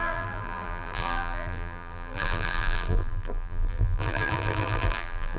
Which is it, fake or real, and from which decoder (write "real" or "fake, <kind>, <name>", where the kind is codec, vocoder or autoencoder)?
fake, vocoder, BigVGAN v2